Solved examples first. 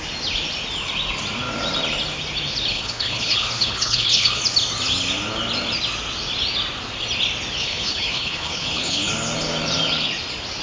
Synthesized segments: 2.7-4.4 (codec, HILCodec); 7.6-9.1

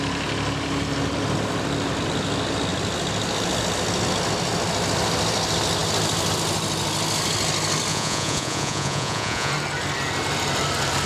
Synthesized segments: 7.9-9.5 (vocoder, Vocos)

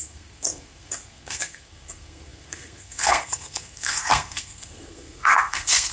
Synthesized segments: 0.0-5.9 (codec, SNAC)

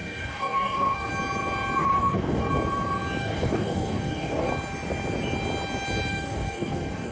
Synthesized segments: 0.0-1.1 (codec, DAC); 1.8-2.5; 3.2-4.5; 6.1-7.1

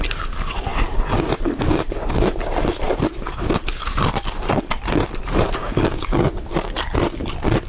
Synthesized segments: 5.6-6.7 (codec, DAC)

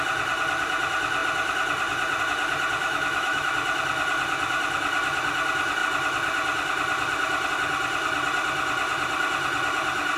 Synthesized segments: 2.8-3.5 (autoencoder, DAC-VAE)